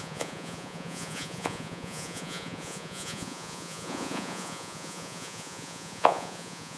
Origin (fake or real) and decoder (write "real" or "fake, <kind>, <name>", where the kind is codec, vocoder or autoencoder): fake, vocoder, Vocos